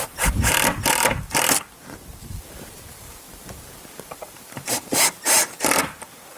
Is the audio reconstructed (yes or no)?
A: yes